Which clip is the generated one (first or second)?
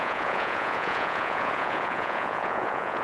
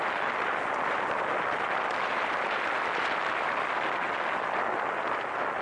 first